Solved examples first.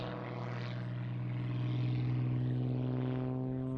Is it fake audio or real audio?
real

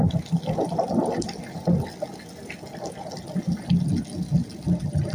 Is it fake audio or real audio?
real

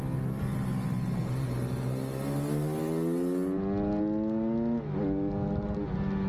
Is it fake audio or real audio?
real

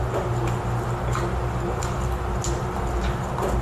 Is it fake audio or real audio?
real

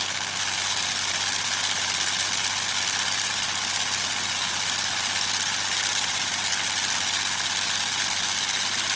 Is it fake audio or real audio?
real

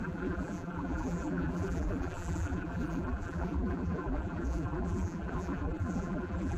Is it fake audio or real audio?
fake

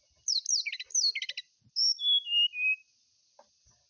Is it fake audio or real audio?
real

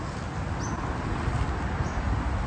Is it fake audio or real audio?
real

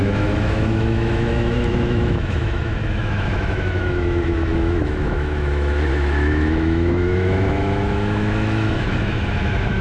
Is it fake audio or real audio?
fake